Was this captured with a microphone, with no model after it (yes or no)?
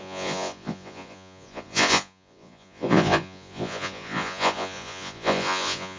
no